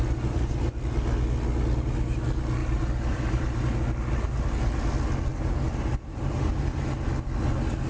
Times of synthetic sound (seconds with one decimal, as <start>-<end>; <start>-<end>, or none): 2.6-3.8; 5.3-7.1